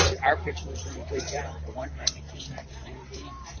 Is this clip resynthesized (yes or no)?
yes